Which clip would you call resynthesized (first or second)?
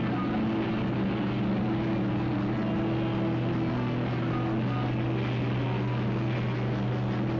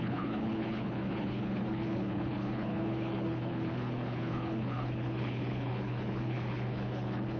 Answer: second